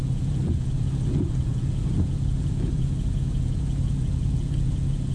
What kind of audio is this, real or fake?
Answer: fake